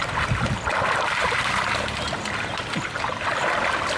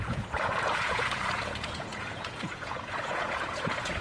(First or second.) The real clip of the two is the first